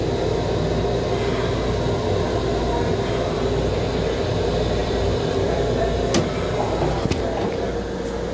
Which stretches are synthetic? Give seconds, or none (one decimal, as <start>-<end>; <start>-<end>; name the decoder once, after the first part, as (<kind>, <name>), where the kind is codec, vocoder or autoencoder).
4.8-5.8 (vocoder, BigVGAN v2)